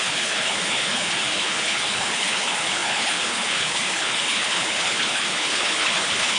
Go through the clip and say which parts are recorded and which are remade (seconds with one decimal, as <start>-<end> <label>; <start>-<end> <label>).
0.0-6.4 remade